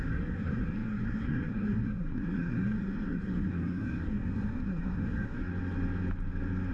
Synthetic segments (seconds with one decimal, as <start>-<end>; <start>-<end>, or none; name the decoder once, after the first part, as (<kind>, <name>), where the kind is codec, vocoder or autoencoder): 0.0-5.5 (codec, SNAC)